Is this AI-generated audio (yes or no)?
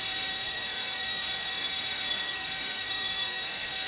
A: yes